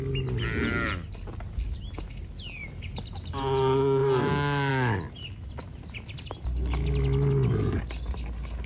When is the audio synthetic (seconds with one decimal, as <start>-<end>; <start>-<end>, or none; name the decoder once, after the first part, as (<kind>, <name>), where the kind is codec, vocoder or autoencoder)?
none